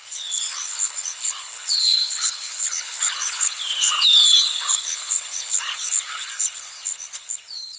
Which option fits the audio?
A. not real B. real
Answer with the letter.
A